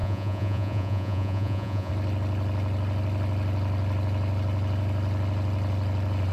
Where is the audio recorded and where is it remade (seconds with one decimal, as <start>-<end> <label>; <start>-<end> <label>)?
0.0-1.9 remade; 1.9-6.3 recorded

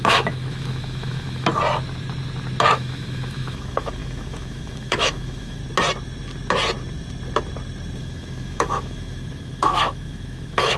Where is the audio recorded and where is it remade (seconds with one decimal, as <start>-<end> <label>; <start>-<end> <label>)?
0.0-1.5 remade; 1.5-2.7 recorded; 2.7-5.6 remade; 5.6-8.0 recorded; 8.0-10.8 remade

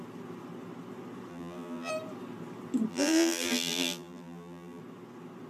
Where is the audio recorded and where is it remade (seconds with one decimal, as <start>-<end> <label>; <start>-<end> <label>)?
0.0-1.3 recorded; 1.3-1.9 remade; 1.9-2.9 recorded; 2.9-4.8 remade; 4.8-5.5 recorded

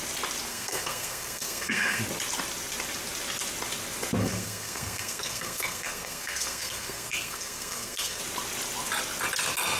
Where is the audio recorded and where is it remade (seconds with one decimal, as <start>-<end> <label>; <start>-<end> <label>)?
0.0-0.5 recorded; 0.5-2.0 remade; 2.0-4.2 recorded; 4.2-8.2 remade; 8.2-9.8 recorded

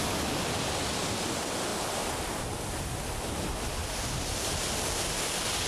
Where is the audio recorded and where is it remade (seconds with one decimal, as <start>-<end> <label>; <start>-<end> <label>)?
0.0-5.7 recorded